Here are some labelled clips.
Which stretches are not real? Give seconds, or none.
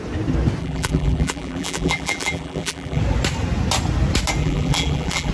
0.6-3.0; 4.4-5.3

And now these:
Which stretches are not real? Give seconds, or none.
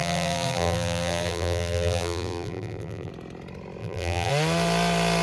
0.0-3.1; 3.8-4.3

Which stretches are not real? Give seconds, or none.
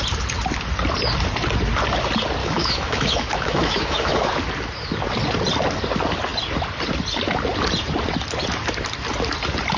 2.4-4.3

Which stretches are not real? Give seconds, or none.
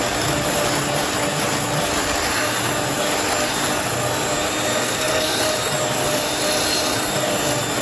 4.7-5.4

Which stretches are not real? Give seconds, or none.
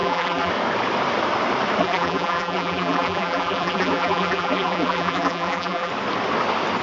0.0-0.5; 1.8-5.9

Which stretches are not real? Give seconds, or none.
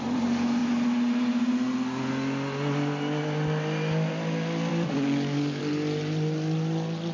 4.7-5.6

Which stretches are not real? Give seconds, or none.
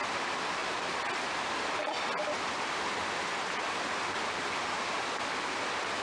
none